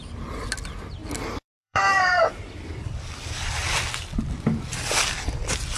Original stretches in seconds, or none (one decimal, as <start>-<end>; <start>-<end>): 0.5-1.0; 2.6-5.8